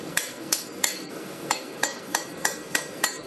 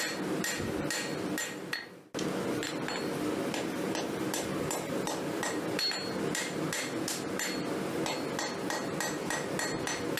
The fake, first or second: first